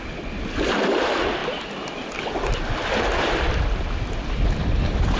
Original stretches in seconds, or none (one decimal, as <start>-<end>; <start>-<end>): 0.0-5.2